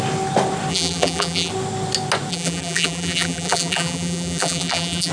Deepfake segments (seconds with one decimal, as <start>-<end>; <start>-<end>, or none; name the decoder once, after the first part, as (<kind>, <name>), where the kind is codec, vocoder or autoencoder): 0.7-1.5 (vocoder, BigVGAN v2); 2.3-5.1